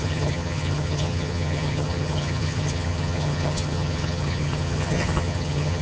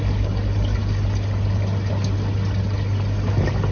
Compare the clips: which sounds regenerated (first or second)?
first